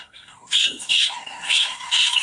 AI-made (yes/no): yes